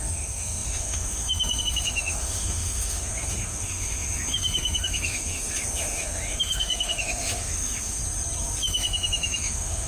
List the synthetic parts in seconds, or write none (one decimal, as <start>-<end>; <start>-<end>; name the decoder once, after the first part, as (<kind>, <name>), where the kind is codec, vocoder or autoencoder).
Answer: 0.0-8.0 (autoencoder, DAC-VAE); 8.6-9.9